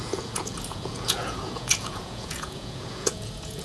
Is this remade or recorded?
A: remade